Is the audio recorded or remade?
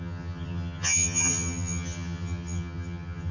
remade